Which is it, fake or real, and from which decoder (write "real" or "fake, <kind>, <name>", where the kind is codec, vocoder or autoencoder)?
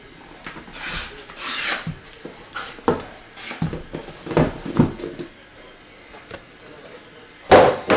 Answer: real